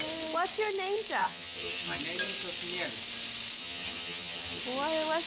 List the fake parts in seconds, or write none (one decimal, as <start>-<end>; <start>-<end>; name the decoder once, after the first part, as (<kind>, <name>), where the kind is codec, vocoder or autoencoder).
1.2-2.0 (vocoder, HiFi-GAN); 3.6-4.6